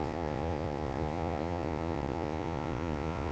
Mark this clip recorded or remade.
remade